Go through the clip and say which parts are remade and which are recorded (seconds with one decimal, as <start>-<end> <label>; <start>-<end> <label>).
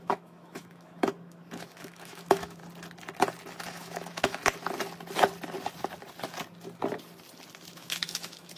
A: 0.0-2.6 remade; 2.6-3.7 recorded; 3.7-4.4 remade; 4.4-7.7 recorded; 7.7-8.6 remade